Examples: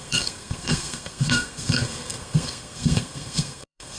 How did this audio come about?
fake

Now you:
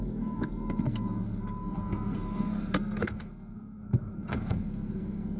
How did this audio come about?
fake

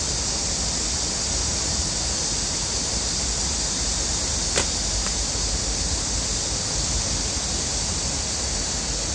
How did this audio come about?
real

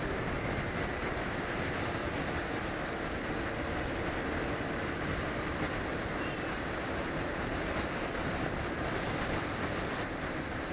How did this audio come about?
real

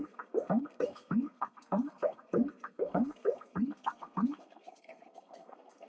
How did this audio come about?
fake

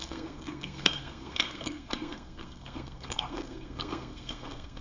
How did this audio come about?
fake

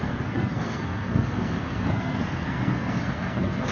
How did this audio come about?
fake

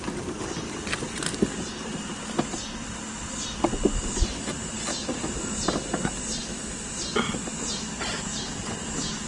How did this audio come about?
real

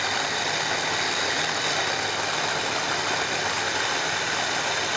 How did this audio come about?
real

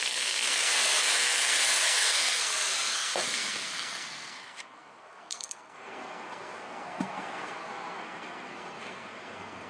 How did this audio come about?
fake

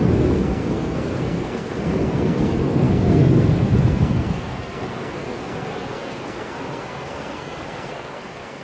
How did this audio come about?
fake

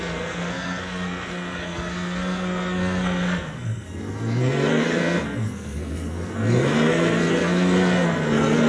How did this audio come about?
fake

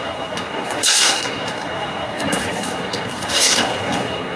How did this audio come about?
fake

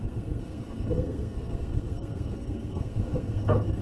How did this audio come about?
fake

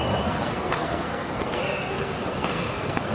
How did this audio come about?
fake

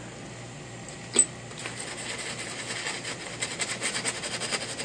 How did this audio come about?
real